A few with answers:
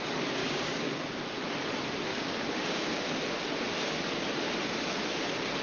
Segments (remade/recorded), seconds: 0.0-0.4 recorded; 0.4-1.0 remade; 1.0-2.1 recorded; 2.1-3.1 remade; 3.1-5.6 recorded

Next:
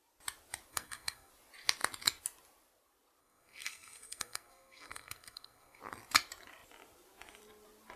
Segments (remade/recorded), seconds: 0.0-0.7 recorded; 0.7-1.3 remade; 1.3-3.2 recorded; 3.2-5.8 remade; 5.8-8.0 recorded

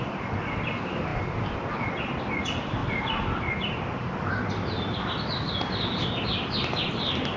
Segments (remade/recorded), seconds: 0.0-7.4 recorded